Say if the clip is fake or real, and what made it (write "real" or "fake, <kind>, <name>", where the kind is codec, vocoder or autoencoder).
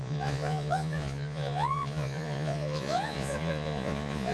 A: fake, vocoder, Vocos